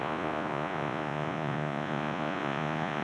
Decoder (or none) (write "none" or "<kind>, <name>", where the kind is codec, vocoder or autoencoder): vocoder, Vocos